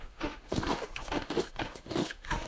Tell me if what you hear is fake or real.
fake